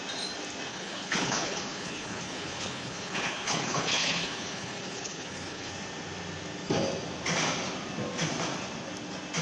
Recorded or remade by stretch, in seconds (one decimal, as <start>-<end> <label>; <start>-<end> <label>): 0.0-0.7 recorded; 0.7-5.7 remade; 5.7-9.4 recorded